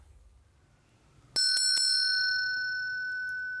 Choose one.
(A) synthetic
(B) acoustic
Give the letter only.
B